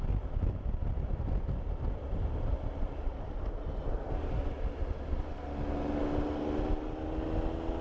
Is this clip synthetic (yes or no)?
no